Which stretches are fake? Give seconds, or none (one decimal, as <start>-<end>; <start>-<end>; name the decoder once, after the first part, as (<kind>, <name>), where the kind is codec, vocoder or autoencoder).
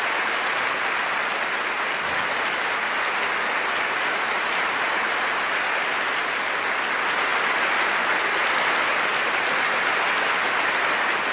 none